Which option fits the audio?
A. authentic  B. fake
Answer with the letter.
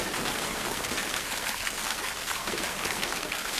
B